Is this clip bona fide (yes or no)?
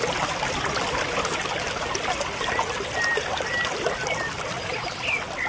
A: yes